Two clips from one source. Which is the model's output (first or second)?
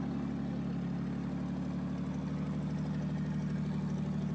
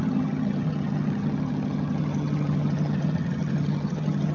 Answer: second